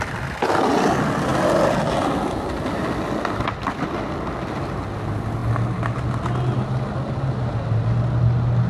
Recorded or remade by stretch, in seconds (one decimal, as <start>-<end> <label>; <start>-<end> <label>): 0.0-8.7 recorded